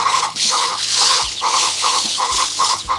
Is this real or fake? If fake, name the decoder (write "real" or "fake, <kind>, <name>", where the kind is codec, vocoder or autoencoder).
fake, codec, HILCodec